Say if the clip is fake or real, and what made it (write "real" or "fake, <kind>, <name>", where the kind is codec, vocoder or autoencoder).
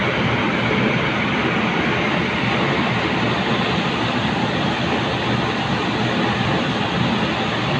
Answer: real